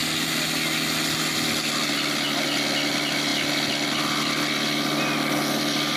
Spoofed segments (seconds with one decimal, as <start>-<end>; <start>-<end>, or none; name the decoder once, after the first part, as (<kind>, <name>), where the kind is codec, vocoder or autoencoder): none